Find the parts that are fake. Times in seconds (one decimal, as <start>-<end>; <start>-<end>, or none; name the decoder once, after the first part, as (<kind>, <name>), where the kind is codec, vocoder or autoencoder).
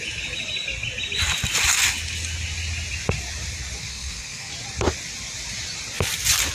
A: 3.8-4.5 (codec, SNAC)